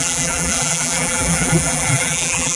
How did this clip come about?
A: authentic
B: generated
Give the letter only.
B